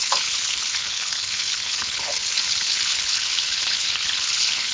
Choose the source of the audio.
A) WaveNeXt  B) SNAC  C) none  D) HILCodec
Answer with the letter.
D